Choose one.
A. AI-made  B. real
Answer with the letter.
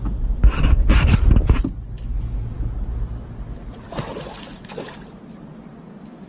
B